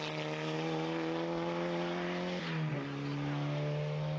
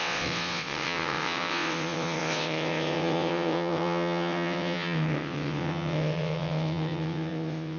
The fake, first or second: second